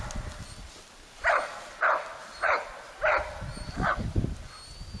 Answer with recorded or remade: recorded